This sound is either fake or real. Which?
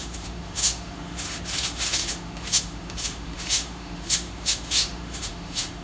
fake